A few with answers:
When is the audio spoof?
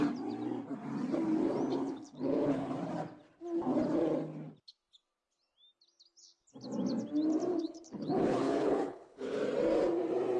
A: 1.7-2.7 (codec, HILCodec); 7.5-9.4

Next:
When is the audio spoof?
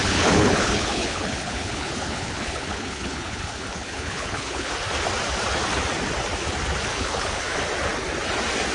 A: 0.0-4.7 (codec, HILCodec); 6.9-7.5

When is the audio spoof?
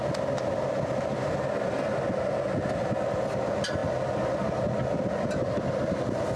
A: none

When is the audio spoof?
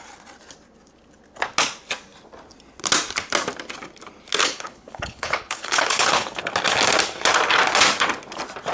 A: 4.4-6.4 (codec, HILCodec)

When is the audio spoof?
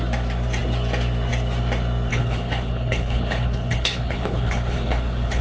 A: 2.1-5.4 (codec, HILCodec)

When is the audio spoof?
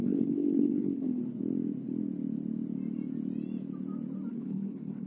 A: 0.0-1.2 (codec, HILCodec); 4.3-5.1